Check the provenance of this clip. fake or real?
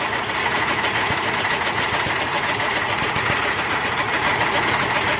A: fake